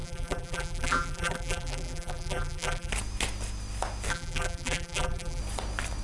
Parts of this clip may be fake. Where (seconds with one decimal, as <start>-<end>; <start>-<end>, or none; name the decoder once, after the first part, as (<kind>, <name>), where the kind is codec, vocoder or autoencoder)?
0.0-2.9 (vocoder, BigVGAN v2); 4.1-5.4